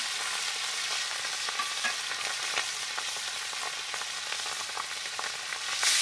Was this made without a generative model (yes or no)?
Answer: yes